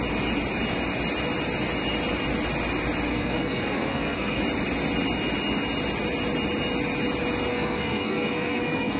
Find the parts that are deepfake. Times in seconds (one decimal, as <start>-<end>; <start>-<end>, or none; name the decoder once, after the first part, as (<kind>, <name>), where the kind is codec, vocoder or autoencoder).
3.1-4.4 (codec, SNAC); 7.5-9.0